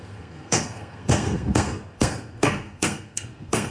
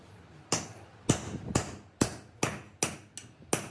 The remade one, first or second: first